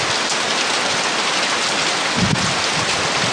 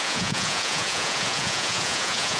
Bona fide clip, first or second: first